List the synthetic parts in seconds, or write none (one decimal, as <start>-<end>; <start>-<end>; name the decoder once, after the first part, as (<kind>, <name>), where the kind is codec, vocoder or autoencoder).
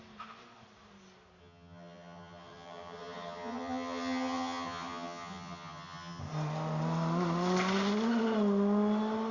1.4-6.2 (vocoder, HiFi-GAN)